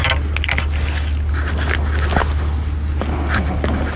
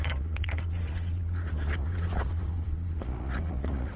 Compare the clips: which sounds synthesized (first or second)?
second